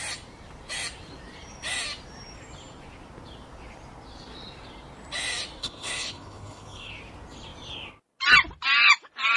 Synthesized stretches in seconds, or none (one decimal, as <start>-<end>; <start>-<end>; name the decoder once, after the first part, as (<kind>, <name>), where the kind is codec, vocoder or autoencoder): 5.6-6.9 (codec, HILCodec)